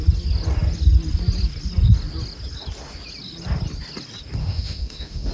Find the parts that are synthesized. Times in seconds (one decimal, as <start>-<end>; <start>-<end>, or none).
4.4-5.3